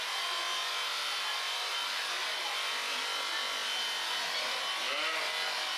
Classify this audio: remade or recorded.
recorded